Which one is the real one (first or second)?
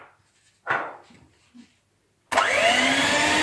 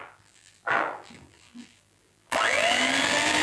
first